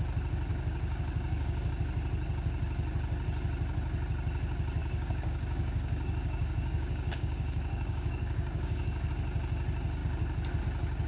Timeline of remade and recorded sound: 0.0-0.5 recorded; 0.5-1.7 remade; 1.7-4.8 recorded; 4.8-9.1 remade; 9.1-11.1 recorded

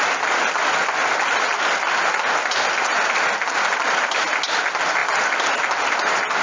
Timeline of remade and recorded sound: 0.0-6.4 recorded

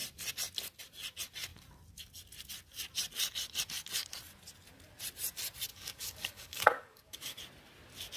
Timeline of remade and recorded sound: 0.0-5.7 recorded; 5.7-7.4 remade; 7.4-8.2 recorded

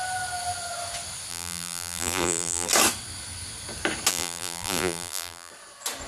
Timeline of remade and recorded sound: 0.0-1.3 recorded; 1.3-2.7 remade; 2.7-4.1 recorded; 4.1-5.5 remade; 5.5-6.1 recorded

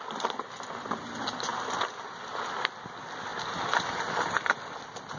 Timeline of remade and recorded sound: 0.0-3.3 recorded; 3.3-5.2 remade

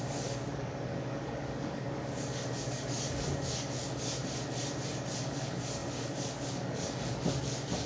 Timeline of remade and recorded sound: 0.0-4.2 remade; 4.2-5.2 recorded; 5.2-7.9 remade

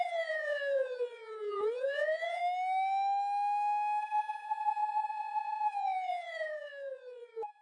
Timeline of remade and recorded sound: 0.0-2.4 remade; 2.4-4.0 recorded; 4.0-7.6 remade

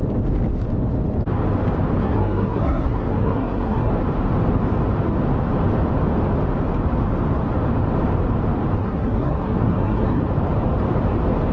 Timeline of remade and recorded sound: 0.0-2.0 recorded; 2.0-3.9 remade; 3.9-8.8 recorded; 8.8-10.2 remade; 10.2-11.5 recorded